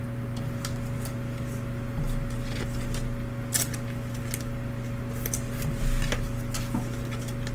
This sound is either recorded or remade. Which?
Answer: recorded